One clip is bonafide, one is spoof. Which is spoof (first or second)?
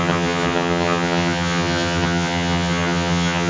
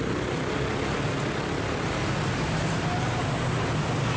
first